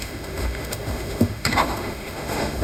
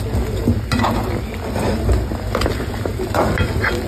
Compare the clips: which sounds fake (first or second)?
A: first